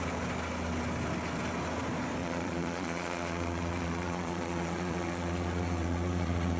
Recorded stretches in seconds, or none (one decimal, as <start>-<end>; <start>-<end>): 0.0-2.2